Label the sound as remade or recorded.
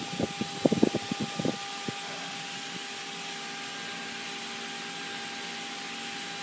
recorded